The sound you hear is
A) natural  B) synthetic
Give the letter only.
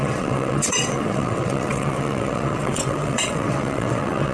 B